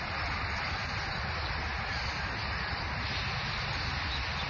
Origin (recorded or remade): recorded